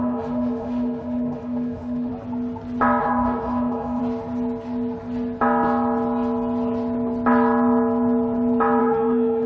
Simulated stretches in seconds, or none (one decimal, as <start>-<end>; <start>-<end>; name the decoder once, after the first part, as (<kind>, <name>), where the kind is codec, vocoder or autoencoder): 0.0-2.1 (autoencoder, DAC-VAE); 3.0-4.0; 8.8-9.5